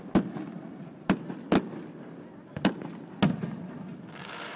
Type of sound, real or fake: real